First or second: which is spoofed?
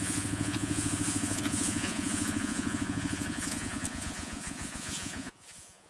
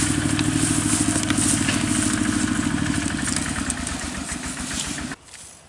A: first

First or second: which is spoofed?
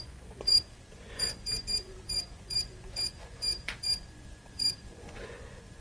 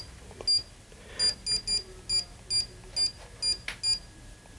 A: first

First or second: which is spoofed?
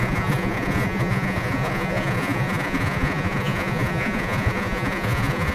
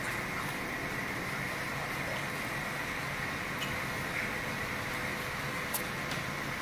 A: first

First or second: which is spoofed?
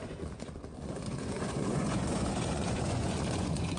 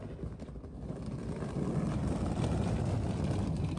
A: first